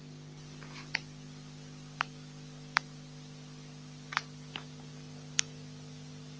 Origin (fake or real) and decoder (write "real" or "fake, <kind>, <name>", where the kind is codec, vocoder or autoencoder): real